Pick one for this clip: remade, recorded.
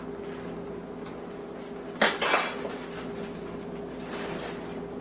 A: recorded